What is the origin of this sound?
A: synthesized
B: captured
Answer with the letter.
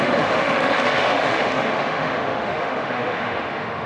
A